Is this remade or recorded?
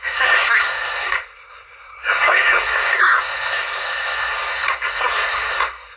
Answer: remade